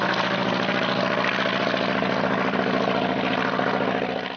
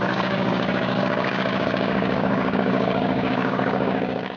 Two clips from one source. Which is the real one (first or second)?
first